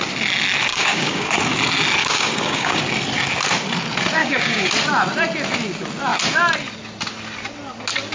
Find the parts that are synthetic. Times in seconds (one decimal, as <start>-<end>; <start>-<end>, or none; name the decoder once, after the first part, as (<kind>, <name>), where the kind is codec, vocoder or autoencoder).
0.7-1.3 (codec, DAC); 2.0-2.8; 4.2-4.7